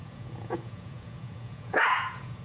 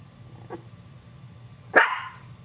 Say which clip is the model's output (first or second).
first